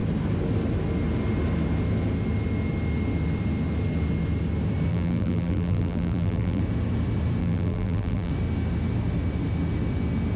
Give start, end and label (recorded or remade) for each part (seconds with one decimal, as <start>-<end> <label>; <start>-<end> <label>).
0.0-4.9 recorded; 4.9-6.6 remade; 6.6-7.4 recorded; 7.4-8.3 remade; 8.3-10.4 recorded